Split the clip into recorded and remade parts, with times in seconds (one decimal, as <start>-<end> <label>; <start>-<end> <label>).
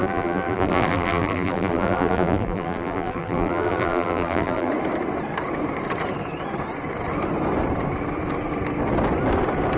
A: 0.0-4.7 remade; 4.7-9.8 recorded